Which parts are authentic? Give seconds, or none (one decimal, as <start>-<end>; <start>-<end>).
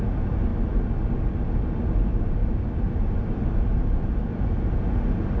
0.0-2.4; 4.2-5.4